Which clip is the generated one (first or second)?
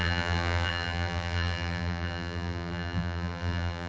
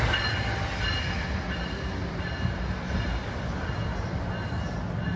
first